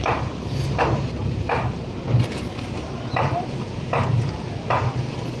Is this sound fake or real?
real